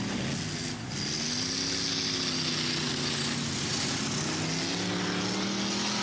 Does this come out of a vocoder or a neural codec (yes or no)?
no